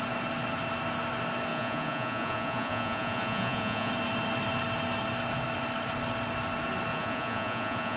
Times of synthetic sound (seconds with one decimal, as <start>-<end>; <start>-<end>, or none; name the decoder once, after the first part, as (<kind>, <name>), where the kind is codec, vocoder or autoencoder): 1.5-3.9 (vocoder, Vocos); 6.9-8.0